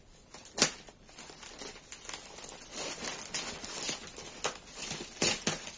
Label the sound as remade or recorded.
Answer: recorded